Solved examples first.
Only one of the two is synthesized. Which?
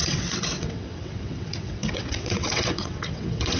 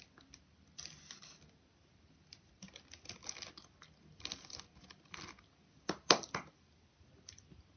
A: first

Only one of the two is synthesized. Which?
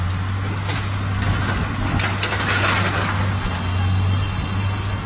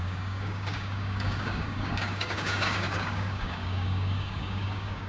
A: second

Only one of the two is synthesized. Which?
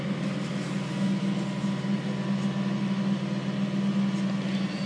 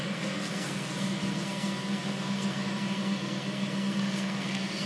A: second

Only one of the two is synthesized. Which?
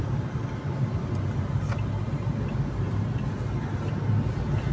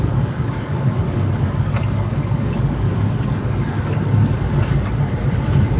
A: second